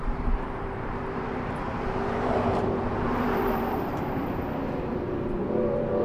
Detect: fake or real fake